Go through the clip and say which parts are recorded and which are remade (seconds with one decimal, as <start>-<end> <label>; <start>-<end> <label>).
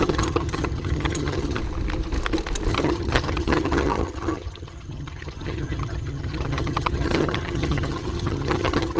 0.0-1.6 remade; 1.6-2.7 recorded; 2.7-9.0 remade